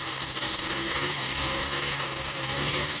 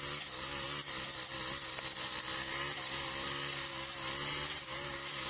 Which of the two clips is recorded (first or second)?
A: second